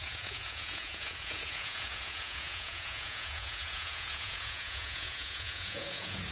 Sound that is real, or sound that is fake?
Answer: fake